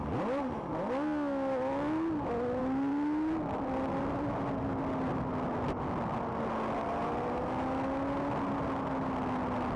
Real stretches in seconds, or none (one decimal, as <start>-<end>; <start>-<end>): 0.0-9.8